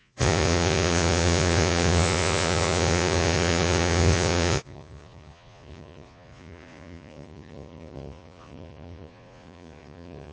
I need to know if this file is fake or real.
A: fake